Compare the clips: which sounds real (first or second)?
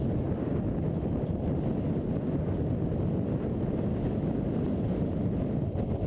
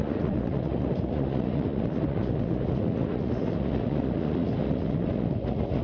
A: first